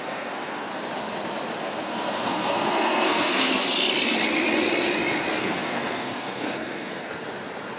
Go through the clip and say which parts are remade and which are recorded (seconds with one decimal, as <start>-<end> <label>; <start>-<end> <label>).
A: 0.0-0.7 remade; 0.7-1.6 recorded; 1.6-3.5 remade; 3.5-5.4 recorded; 5.4-7.0 remade; 7.0-7.8 recorded